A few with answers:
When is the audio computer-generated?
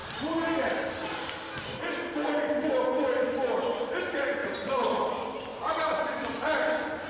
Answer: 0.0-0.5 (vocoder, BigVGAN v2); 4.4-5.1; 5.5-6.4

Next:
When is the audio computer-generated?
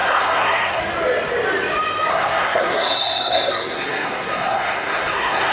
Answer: 0.0-0.8 (codec, SNAC); 2.1-5.5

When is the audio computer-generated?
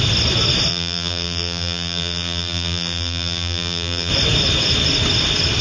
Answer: 0.7-4.1 (vocoder, BigVGAN v2)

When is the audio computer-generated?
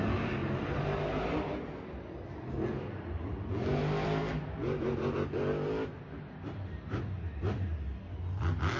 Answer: none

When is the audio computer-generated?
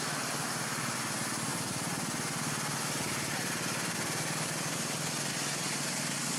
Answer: none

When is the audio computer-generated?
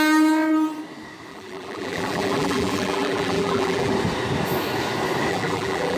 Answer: 1.3-3.9 (vocoder, BigVGAN v2); 5.3-6.0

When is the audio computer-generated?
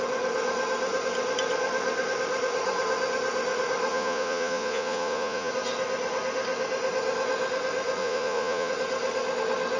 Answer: 3.9-5.5 (vocoder, Vocos); 8.0-8.7